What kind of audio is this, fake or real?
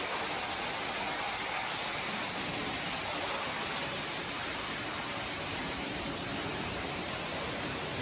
real